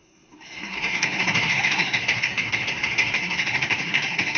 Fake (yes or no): yes